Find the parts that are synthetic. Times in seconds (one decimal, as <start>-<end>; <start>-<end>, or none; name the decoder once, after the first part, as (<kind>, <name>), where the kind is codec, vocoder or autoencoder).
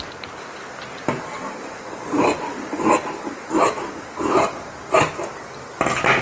1.6-2.9 (vocoder, Vocos)